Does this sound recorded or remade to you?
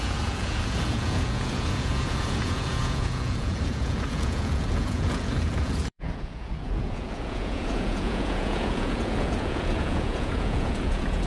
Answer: remade